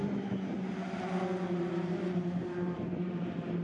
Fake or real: real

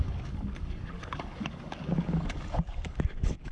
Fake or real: fake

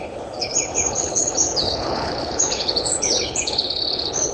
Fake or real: fake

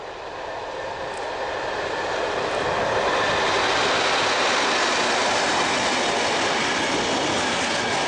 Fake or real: real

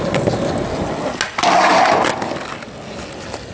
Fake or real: real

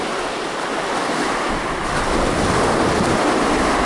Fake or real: fake